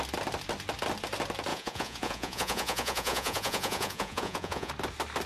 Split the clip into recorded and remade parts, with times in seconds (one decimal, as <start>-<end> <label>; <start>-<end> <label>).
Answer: 0.0-1.5 recorded; 1.5-4.7 remade; 4.7-5.3 recorded